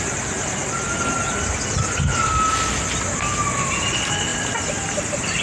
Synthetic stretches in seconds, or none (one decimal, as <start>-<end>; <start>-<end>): none